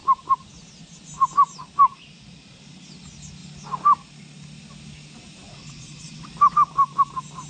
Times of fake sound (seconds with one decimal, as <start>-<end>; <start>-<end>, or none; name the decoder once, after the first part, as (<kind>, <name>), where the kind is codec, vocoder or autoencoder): 5.6-6.2 (vocoder, WaveNeXt)